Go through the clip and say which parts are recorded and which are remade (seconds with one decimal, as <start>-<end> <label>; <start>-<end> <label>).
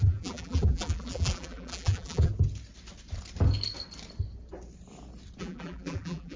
0.0-2.3 remade; 2.3-5.4 recorded; 5.4-6.4 remade